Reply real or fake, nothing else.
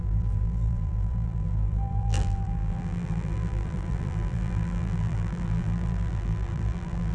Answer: fake